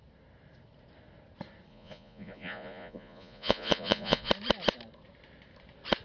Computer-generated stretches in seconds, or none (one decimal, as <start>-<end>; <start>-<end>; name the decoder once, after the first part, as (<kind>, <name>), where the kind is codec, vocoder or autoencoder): 1.7-4.3 (vocoder, Vocos)